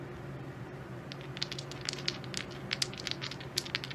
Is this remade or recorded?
recorded